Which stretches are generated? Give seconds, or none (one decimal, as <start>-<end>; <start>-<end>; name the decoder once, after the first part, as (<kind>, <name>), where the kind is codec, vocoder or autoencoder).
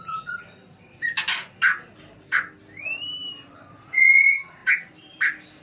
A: 0.0-0.4 (vocoder, Vocos); 3.8-4.6